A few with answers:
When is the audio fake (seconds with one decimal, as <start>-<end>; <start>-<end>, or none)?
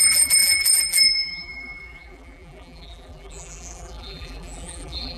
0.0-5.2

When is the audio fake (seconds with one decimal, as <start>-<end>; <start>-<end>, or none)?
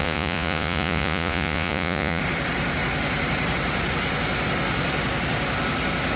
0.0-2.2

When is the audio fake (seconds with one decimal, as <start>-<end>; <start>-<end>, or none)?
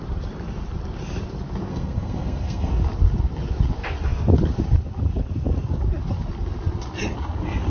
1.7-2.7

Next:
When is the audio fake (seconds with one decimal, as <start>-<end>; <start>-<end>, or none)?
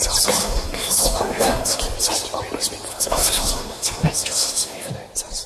0.4-1.8; 2.9-4.9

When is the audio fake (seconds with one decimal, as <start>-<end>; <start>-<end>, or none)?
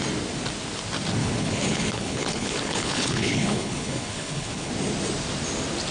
1.2-4.7